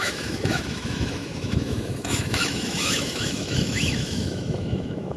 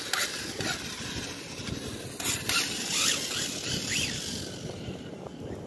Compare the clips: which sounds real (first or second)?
second